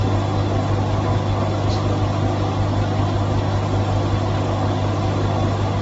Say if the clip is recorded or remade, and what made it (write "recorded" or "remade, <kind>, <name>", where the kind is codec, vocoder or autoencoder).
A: recorded